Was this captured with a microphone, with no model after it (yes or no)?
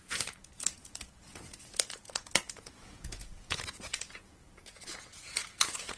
no